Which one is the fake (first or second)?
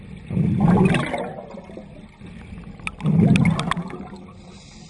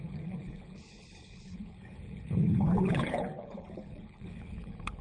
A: second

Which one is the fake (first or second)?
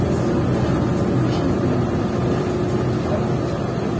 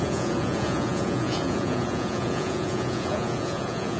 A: second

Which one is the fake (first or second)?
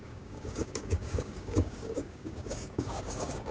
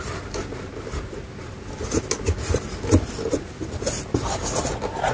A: first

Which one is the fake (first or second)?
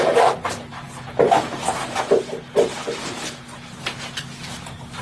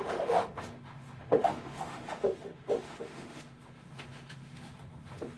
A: second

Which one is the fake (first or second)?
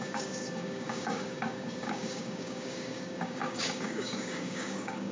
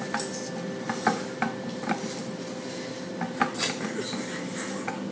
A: first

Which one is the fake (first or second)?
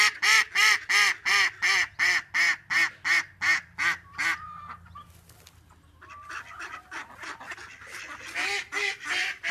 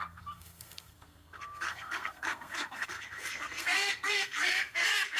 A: second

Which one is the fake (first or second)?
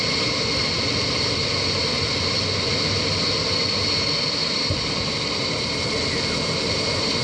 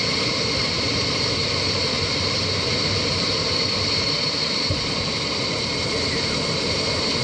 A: second